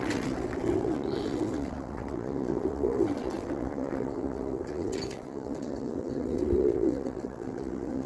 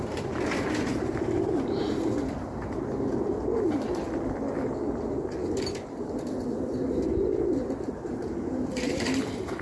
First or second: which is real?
second